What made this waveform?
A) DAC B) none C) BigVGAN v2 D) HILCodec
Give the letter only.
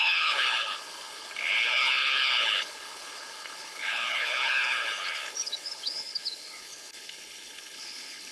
D